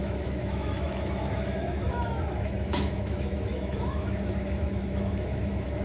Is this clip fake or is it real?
fake